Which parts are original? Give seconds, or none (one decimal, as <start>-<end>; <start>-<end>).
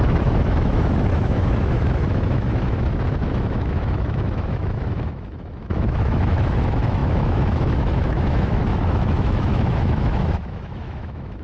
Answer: none